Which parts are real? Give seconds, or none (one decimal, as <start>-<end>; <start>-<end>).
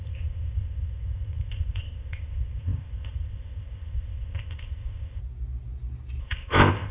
5.2-6.2